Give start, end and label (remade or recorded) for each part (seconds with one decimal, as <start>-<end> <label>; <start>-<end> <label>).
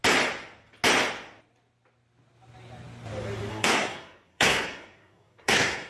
0.0-3.5 recorded; 3.5-5.9 remade